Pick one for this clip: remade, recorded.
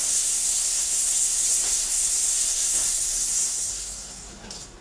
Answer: remade